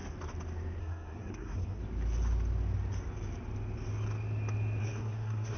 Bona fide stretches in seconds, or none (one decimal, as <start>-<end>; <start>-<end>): 0.0-0.8; 1.8-4.8